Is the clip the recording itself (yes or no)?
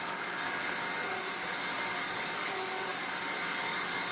no